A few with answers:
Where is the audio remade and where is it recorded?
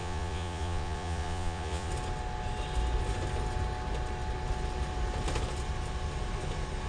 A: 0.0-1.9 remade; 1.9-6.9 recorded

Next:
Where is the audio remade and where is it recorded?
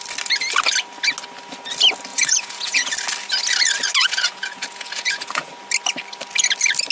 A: 0.0-2.1 recorded; 2.1-2.9 remade; 2.9-4.0 recorded; 4.0-5.5 remade; 5.5-6.9 recorded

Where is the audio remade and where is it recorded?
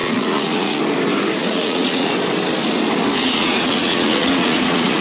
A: 0.0-0.8 remade; 0.8-1.4 recorded; 1.4-2.1 remade; 2.1-3.2 recorded; 3.2-5.0 remade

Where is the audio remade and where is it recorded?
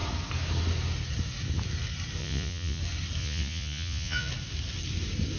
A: 0.0-2.2 recorded; 2.2-2.8 remade; 2.8-3.2 recorded; 3.2-4.3 remade; 4.3-5.4 recorded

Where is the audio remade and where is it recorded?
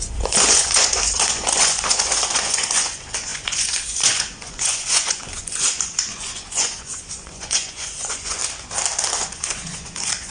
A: 0.0-8.4 remade; 8.4-9.1 recorded; 9.1-10.3 remade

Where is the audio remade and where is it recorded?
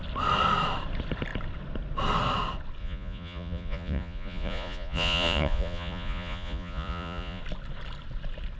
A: 0.0-2.8 recorded; 2.8-7.4 remade; 7.4-8.6 recorded